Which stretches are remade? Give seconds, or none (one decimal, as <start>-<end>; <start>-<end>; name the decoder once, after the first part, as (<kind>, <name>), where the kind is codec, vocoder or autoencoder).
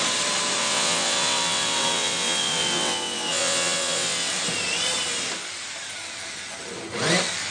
0.6-4.3 (vocoder, WaveNeXt)